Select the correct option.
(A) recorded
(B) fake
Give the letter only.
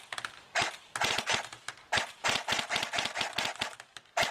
A